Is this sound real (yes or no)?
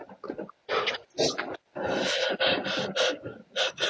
yes